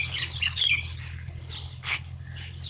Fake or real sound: fake